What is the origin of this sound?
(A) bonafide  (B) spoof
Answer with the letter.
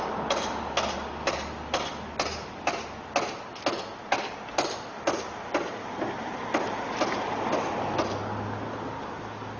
A